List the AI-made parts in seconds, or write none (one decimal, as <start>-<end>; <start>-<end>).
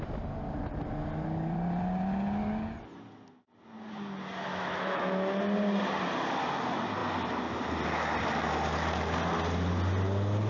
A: 4.5-5.4